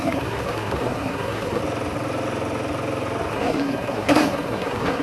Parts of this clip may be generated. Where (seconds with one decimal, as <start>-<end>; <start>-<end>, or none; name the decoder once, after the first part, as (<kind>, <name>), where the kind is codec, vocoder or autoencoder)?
0.0-1.6 (codec, SNAC); 3.3-5.0